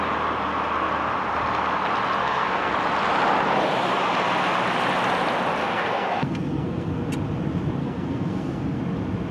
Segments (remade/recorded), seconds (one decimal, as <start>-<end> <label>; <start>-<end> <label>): 0.0-2.2 recorded; 2.2-2.7 remade; 2.7-5.6 recorded; 5.6-7.0 remade; 7.0-7.8 recorded; 7.8-8.8 remade; 8.8-9.3 recorded